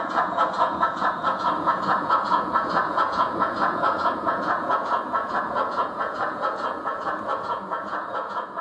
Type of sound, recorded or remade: remade